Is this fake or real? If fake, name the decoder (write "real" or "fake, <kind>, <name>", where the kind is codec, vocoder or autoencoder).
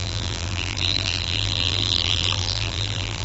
fake, vocoder, BigVGAN v2